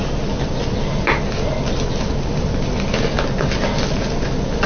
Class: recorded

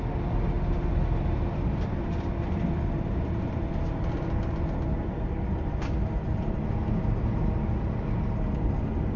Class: recorded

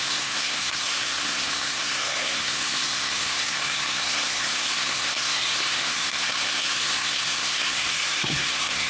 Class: remade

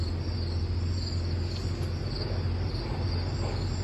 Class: recorded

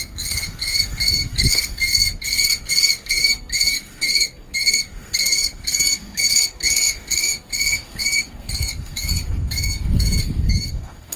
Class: remade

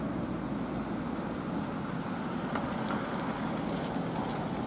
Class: recorded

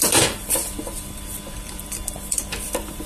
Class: remade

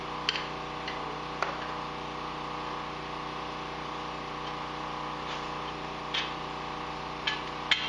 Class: recorded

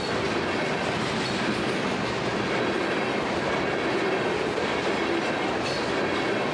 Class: recorded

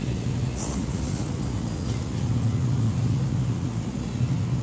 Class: remade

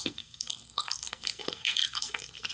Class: remade